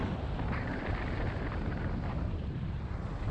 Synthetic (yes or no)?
no